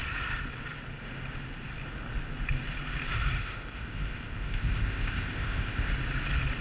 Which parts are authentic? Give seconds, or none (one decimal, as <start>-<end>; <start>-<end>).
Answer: 0.0-3.4; 5.9-6.6